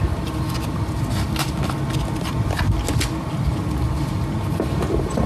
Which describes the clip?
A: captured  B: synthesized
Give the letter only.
A